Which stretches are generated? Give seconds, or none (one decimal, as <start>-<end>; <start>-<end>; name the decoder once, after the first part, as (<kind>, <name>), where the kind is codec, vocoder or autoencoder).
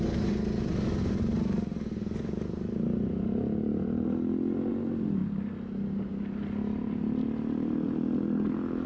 none